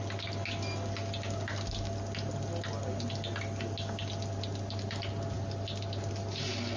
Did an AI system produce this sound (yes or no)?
no